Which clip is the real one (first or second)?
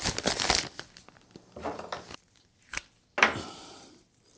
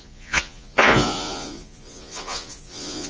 first